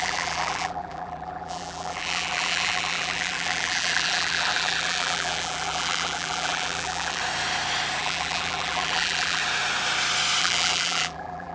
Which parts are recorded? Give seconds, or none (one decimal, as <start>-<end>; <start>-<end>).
7.2-8.0; 9.4-10.4